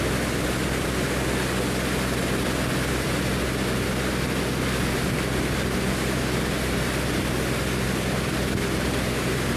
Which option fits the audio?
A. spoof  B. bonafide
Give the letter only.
B